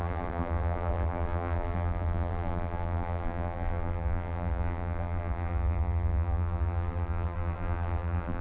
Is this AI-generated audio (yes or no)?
yes